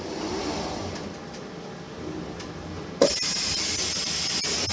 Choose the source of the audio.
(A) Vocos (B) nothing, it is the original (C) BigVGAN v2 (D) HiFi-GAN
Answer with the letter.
B